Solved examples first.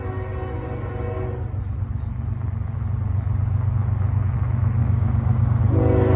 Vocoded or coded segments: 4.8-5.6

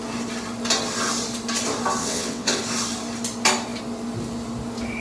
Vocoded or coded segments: 2.0-2.6

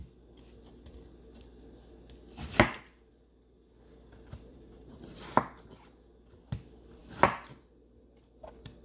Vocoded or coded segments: 4.5-5.4